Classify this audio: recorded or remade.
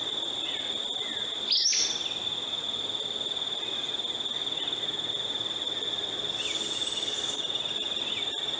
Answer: recorded